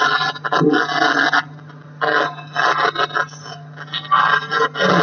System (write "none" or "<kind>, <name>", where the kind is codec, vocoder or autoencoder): none